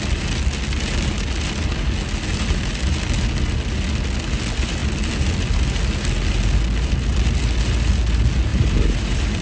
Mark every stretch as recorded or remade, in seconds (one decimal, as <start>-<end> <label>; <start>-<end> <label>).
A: 0.0-8.5 recorded; 8.5-9.4 remade